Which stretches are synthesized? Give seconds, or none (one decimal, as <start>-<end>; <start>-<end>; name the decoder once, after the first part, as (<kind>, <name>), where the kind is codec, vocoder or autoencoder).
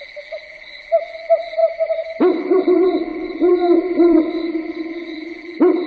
0.0-1.6 (vocoder, BigVGAN v2); 2.4-5.9